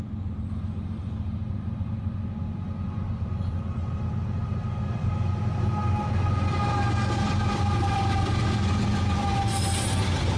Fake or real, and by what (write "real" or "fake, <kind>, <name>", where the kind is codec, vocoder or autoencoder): real